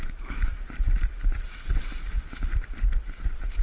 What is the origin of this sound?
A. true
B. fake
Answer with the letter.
A